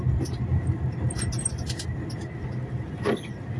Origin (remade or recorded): recorded